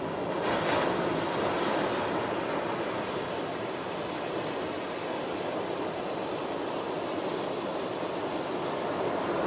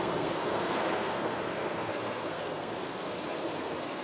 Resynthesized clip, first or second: second